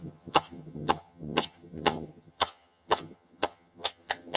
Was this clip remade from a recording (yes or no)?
yes